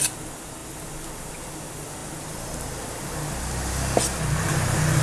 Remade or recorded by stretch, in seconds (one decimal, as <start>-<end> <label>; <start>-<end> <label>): 0.0-5.0 recorded